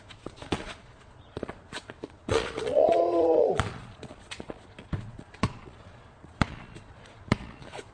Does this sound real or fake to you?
fake